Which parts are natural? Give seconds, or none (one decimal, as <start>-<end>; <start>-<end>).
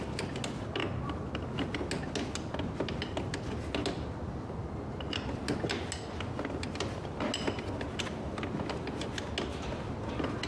0.0-10.5